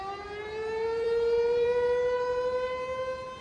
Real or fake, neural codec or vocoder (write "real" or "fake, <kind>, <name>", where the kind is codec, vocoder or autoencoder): fake, vocoder, BigVGAN v2